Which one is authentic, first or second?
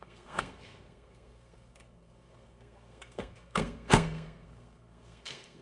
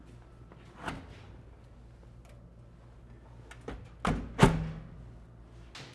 second